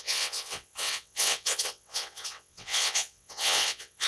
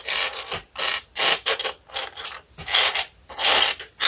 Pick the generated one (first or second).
first